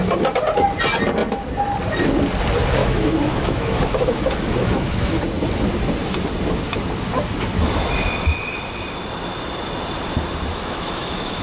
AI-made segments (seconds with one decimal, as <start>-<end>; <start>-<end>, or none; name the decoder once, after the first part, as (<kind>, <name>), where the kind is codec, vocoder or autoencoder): 2.8-5.2 (autoencoder, DAC-VAE); 10.5-11.4